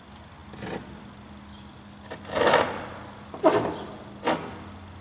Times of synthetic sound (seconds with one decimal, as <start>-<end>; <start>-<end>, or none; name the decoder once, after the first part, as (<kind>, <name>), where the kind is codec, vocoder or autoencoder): none

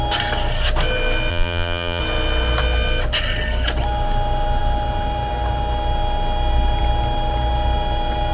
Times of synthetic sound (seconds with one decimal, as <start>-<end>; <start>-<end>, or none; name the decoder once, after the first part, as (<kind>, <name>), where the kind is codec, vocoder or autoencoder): 1.3-2.0 (vocoder, BigVGAN v2)